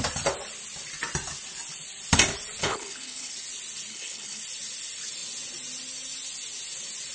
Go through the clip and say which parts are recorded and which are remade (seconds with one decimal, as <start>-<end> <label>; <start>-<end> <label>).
0.0-2.6 recorded; 2.6-3.3 remade; 3.3-3.9 recorded; 3.9-4.4 remade; 4.4-7.1 recorded